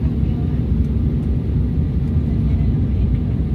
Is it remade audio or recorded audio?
recorded